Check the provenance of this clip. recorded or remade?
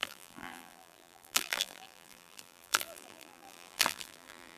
remade